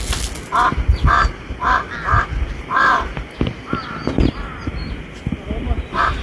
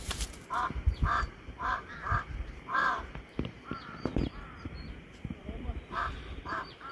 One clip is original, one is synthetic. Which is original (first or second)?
first